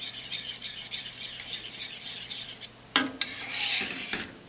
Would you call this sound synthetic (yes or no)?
yes